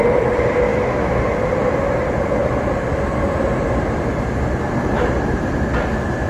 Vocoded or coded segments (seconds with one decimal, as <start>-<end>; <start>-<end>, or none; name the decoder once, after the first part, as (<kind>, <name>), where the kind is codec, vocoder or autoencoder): 0.7-1.2 (autoencoder, DAC-VAE)